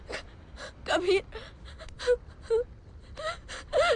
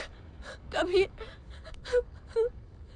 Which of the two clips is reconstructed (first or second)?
second